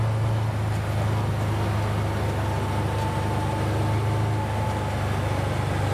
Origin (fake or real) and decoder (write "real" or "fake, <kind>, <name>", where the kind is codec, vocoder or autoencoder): real